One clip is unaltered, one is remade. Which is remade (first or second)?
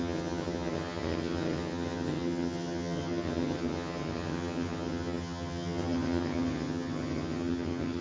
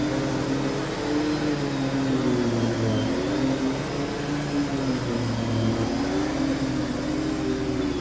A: first